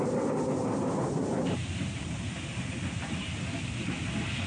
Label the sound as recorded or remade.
remade